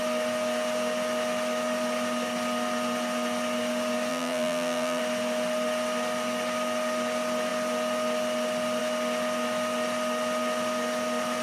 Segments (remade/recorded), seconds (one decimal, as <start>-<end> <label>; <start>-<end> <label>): 0.0-4.1 recorded; 4.1-5.0 remade; 5.0-11.4 recorded